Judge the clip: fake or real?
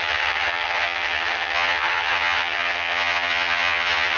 fake